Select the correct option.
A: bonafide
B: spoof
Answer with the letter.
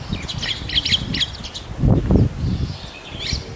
A